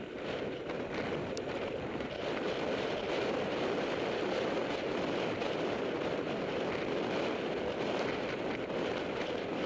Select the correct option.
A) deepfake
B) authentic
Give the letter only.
B